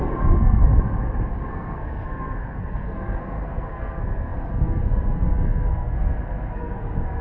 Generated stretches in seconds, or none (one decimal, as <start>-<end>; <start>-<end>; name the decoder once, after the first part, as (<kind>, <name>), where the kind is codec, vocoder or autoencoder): 0.0-0.7 (codec, SNAC); 1.5-7.2